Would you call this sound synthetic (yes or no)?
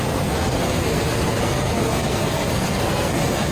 yes